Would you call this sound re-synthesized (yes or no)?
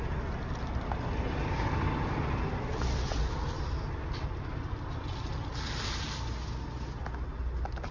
no